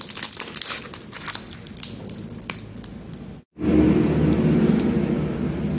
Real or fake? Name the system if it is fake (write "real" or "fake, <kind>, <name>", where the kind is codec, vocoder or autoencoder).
real